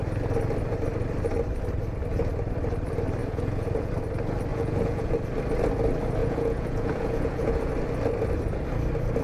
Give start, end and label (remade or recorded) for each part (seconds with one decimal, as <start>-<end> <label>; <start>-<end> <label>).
0.0-3.2 recorded; 3.2-3.9 remade; 3.9-4.5 recorded; 4.5-5.1 remade; 5.1-6.2 recorded; 6.2-7.7 remade; 7.7-9.2 recorded